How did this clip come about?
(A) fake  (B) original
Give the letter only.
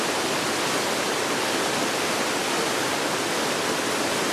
B